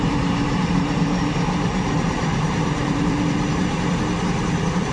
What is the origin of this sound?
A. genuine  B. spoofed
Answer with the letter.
B